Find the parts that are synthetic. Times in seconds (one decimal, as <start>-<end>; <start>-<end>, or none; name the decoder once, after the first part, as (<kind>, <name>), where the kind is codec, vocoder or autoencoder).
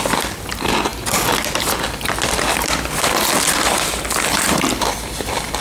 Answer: none